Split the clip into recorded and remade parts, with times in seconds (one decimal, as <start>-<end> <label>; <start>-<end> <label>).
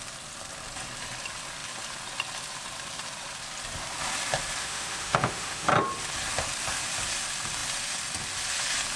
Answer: 0.0-4.6 recorded; 4.6-5.7 remade; 5.7-9.0 recorded